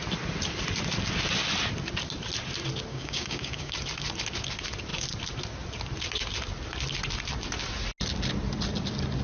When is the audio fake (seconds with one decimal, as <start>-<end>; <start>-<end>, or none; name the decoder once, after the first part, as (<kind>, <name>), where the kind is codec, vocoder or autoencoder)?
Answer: 2.9-3.7 (codec, DAC)